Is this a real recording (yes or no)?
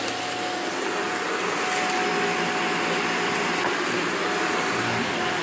yes